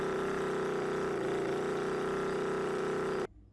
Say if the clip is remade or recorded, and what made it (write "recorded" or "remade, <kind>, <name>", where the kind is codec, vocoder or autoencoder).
recorded